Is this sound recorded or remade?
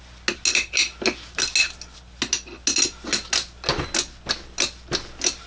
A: recorded